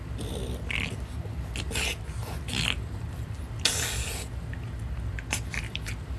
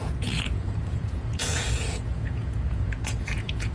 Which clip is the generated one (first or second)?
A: second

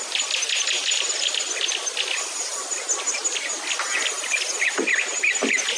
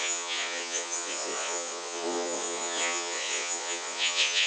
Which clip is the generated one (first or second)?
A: second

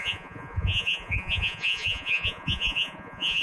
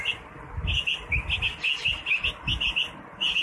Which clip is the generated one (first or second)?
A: first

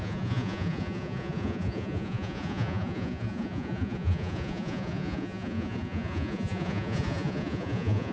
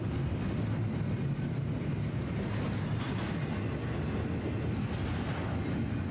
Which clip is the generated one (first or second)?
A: first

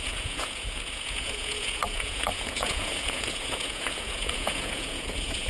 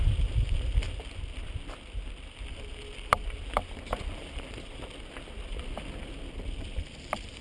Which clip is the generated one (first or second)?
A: first